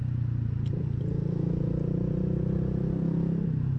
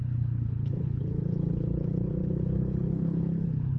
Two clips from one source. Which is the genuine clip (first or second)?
first